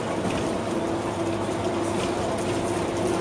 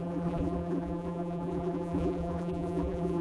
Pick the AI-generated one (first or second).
second